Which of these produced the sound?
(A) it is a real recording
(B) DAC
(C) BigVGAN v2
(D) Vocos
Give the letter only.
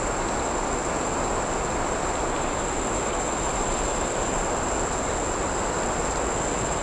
A